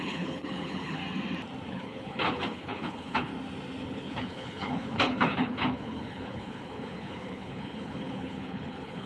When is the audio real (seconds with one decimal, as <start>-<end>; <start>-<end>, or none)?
1.0-1.7; 3.3-3.8